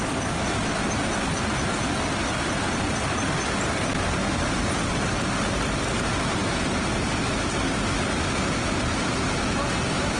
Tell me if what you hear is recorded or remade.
recorded